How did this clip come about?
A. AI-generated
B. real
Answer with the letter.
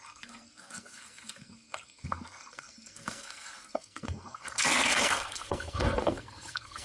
A